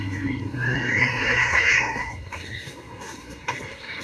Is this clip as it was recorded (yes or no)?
no